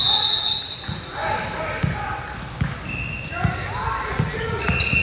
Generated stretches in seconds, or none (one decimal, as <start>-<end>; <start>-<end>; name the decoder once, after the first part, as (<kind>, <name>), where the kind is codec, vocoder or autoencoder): 0.0-1.2 (vocoder, Vocos); 4.2-5.0